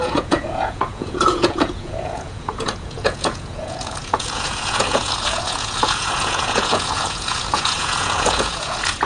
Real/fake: fake